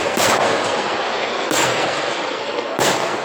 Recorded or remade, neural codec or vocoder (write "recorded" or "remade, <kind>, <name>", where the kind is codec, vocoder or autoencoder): remade, codec, SNAC